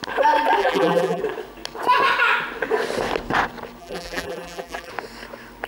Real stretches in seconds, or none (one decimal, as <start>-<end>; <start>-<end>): 0.0-0.6; 1.2-3.8; 4.9-5.7